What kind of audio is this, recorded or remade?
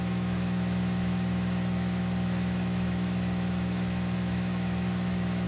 remade